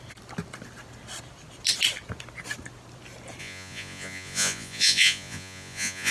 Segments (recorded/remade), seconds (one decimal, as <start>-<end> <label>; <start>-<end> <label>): 0.0-3.4 recorded; 3.4-6.1 remade